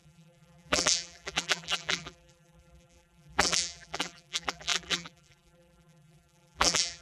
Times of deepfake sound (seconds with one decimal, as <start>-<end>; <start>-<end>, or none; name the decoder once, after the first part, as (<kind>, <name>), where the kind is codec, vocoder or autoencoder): 0.0-7.0 (vocoder, BigVGAN v2)